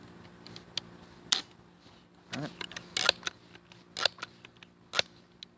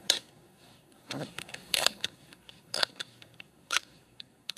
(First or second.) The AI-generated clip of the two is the second